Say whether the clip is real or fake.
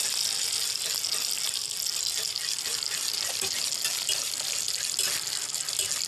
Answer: real